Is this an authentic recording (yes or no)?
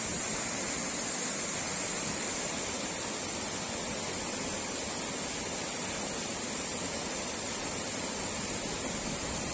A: yes